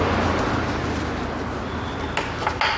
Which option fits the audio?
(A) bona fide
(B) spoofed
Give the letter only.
A